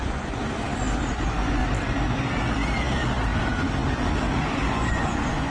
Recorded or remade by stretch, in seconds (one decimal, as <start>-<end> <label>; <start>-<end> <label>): 0.0-0.4 remade; 0.4-1.1 recorded; 1.1-1.6 remade; 1.6-4.7 recorded; 4.7-5.5 remade